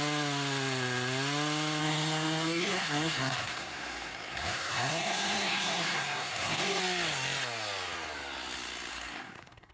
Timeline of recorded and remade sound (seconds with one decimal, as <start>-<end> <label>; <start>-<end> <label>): 0.0-1.8 recorded; 1.8-6.8 remade; 6.8-8.9 recorded; 8.9-9.7 remade